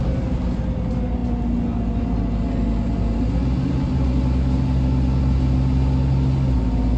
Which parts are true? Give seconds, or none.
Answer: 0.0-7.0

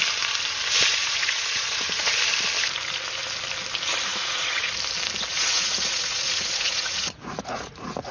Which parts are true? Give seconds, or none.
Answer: 0.0-1.0; 2.1-4.1; 4.7-5.3